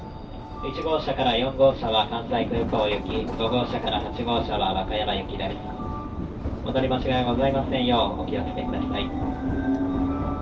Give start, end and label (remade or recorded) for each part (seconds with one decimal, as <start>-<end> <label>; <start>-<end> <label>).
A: 0.0-10.4 recorded